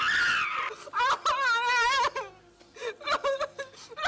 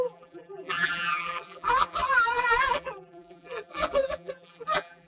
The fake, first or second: second